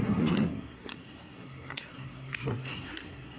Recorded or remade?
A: remade